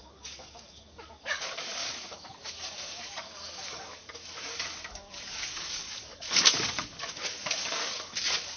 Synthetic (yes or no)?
yes